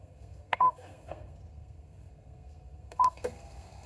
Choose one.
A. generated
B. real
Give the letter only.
A